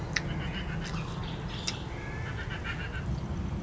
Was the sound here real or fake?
real